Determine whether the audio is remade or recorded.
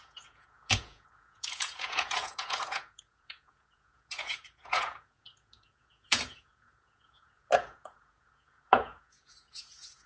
remade